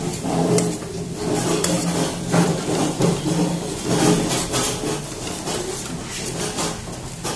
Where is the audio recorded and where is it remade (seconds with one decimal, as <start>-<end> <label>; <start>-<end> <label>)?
0.0-7.4 recorded